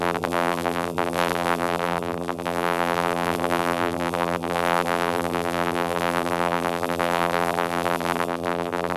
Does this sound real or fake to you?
fake